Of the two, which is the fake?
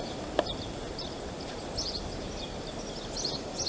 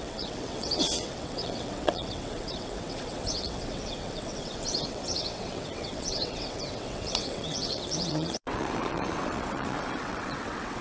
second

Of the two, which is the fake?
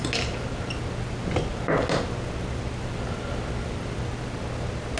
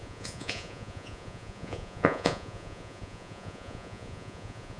second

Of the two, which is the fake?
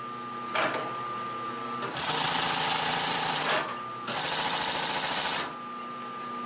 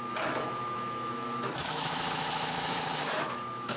second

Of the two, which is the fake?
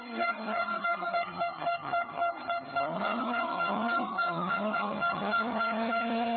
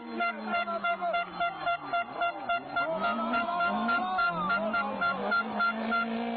first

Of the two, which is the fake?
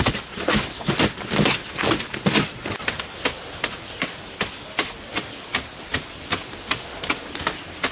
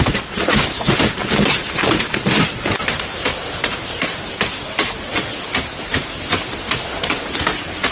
second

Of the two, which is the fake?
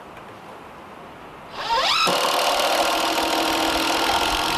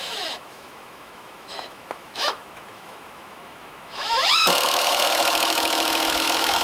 second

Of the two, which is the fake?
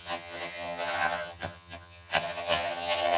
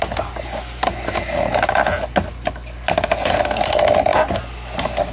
first